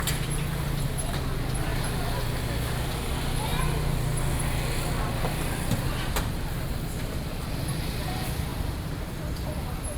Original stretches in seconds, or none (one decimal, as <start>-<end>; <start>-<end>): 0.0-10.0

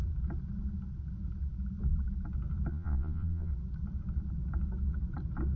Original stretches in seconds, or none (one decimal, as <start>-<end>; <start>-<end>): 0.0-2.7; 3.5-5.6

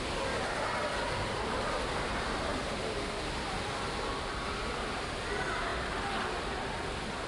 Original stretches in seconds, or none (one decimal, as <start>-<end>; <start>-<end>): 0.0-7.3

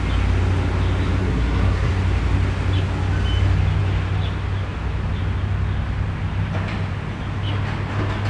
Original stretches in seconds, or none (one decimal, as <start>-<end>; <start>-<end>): 0.0-1.2; 1.9-8.3